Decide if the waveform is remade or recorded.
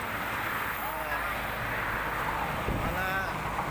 recorded